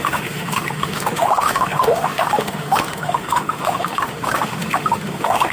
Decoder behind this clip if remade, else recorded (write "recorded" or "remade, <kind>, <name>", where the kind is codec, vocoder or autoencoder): remade, autoencoder, DAC-VAE